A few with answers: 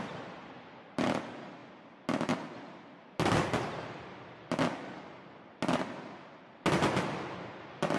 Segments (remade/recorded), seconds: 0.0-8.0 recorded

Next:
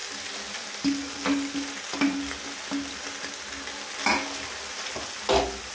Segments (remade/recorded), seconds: 0.0-5.7 recorded

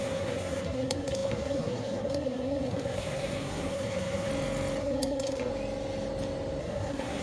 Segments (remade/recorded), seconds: 0.0-4.3 remade; 4.3-4.8 recorded; 4.8-5.5 remade; 5.5-6.6 recorded; 6.6-7.2 remade